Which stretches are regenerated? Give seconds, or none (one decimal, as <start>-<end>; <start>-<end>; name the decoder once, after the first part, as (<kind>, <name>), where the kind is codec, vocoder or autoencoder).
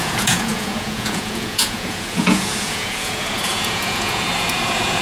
0.0-5.0 (vocoder, Vocos)